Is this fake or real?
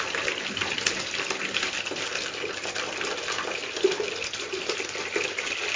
real